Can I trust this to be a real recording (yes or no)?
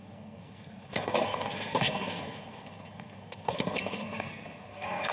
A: no